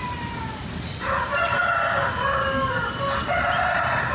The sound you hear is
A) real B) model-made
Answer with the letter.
A